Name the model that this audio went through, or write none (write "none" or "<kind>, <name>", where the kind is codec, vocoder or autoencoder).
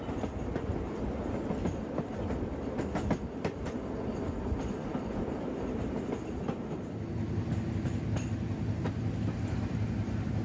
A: none